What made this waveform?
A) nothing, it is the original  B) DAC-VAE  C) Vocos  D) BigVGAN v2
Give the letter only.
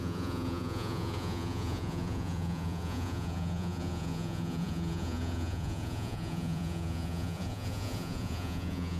C